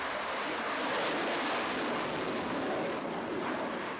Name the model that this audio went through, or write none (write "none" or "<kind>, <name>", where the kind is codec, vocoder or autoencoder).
none